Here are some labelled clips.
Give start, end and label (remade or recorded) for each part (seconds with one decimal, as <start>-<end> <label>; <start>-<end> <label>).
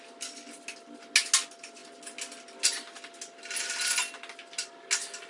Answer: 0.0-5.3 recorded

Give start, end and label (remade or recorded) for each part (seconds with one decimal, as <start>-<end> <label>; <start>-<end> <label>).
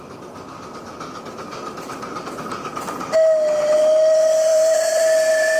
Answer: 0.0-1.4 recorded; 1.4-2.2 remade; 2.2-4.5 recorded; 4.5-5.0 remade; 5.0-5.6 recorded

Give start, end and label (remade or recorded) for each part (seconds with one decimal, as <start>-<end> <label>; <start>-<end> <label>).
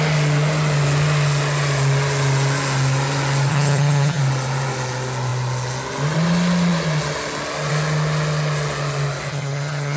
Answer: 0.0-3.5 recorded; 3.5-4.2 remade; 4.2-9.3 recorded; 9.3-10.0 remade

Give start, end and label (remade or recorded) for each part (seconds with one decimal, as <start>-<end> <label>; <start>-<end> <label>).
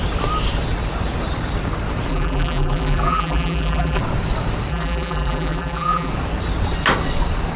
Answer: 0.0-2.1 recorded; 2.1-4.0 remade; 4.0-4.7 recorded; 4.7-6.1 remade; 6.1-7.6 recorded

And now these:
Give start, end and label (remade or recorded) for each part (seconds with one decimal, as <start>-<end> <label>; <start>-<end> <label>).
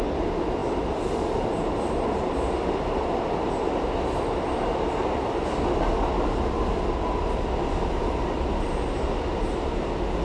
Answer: 0.0-10.2 recorded